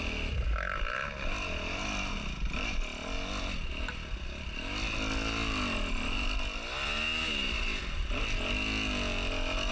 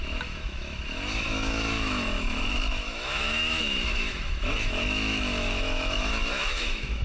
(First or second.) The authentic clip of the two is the first